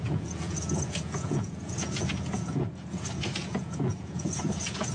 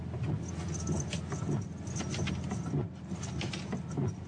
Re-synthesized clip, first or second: first